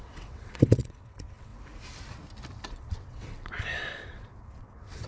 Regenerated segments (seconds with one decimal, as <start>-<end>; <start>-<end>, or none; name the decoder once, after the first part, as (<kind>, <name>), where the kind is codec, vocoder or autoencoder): 0.0-1.5 (vocoder, WaveNeXt); 2.7-5.1